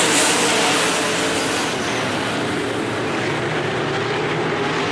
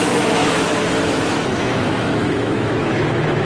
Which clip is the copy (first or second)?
second